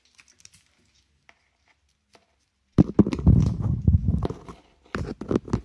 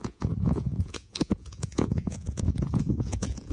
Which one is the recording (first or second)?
first